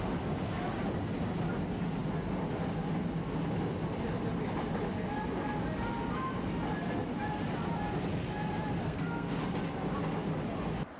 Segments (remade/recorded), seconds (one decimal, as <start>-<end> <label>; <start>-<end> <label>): 0.0-8.8 recorded; 8.8-9.4 remade; 9.4-11.0 recorded